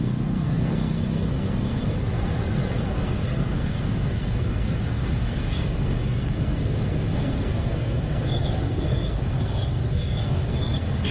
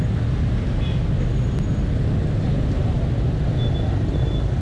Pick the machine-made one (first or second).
first